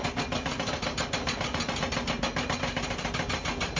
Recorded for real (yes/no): yes